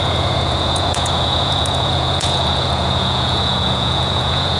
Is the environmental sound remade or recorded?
remade